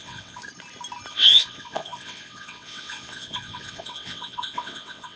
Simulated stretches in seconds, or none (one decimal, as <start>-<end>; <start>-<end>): 0.0-0.4; 1.1-5.2